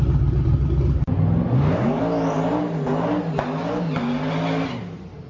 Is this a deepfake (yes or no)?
no